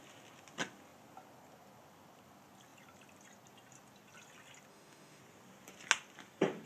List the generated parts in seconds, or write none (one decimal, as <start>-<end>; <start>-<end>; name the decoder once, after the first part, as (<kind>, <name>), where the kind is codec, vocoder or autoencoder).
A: 4.7-5.2 (autoencoder, DAC-VAE)